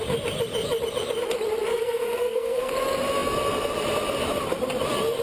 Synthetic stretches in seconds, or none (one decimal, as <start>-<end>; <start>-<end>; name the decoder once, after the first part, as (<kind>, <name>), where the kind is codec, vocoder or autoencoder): 1.7-2.7 (codec, SNAC)